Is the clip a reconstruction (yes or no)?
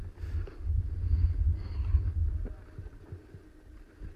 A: no